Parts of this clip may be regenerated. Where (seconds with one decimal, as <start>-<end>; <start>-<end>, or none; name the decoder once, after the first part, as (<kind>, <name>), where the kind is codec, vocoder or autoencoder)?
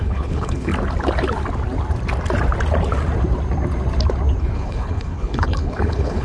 0.0-0.7 (codec, HILCodec); 4.4-6.2